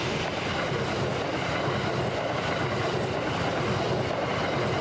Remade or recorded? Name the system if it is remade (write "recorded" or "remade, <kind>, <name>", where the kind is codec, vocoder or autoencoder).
recorded